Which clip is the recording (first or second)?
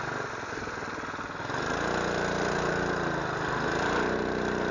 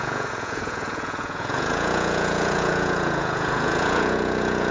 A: first